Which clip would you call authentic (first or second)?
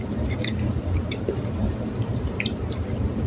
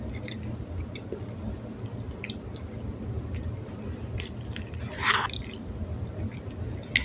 second